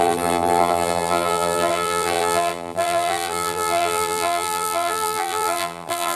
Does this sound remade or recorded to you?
remade